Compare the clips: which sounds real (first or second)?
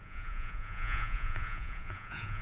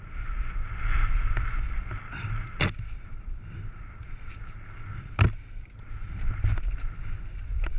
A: second